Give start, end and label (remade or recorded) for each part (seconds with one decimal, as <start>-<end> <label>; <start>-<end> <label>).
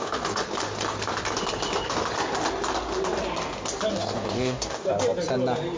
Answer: 0.0-0.4 remade; 0.4-3.9 recorded; 3.9-4.9 remade; 4.9-5.8 recorded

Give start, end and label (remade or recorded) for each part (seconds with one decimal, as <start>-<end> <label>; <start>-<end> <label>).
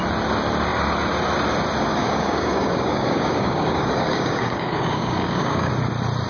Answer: 0.0-1.9 recorded; 1.9-5.7 remade; 5.7-6.3 recorded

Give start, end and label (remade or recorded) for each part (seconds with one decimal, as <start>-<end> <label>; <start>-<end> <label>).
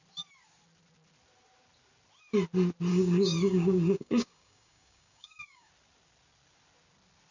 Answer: 0.0-2.9 recorded; 2.9-5.7 remade; 5.7-7.3 recorded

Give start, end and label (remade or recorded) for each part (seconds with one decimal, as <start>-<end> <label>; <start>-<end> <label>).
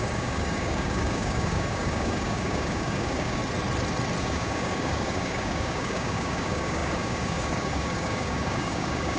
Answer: 0.0-3.4 remade; 3.4-4.2 recorded; 4.2-9.2 remade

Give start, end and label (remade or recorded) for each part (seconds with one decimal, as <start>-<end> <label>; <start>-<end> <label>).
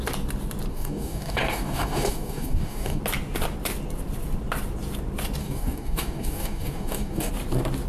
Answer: 0.0-0.7 recorded; 0.7-3.0 remade; 3.0-5.4 recorded; 5.4-7.3 remade; 7.3-7.9 recorded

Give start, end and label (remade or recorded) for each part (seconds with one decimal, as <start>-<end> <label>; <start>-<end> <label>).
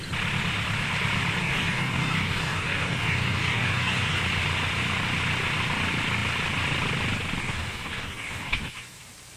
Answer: 0.0-1.4 recorded; 1.4-4.2 remade; 4.2-7.4 recorded; 7.4-9.0 remade; 9.0-9.4 recorded